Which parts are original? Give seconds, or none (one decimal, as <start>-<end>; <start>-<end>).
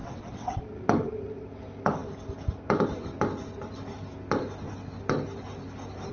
0.6-6.1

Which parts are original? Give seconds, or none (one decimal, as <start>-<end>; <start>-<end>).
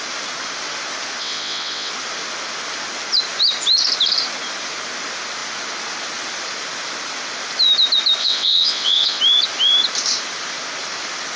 0.0-1.2; 1.9-8.2; 9.2-11.4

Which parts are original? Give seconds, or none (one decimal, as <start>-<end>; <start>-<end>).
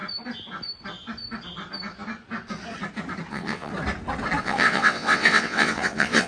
0.0-3.3; 3.7-4.4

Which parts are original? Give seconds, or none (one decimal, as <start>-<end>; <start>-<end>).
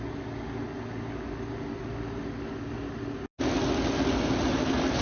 0.0-5.0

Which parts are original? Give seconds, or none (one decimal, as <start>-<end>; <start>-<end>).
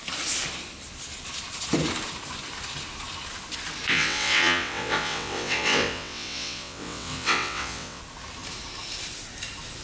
0.0-3.9; 8.0-9.8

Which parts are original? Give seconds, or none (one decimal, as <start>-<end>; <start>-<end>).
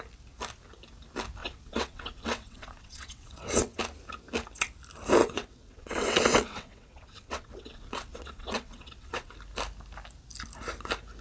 0.0-1.4; 3.8-5.2; 9.3-11.2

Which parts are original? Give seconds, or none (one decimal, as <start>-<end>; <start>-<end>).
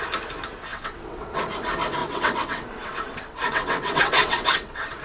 0.0-0.7; 1.4-2.0